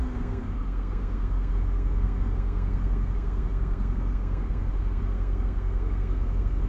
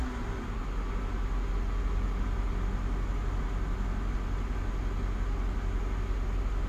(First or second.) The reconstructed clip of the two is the first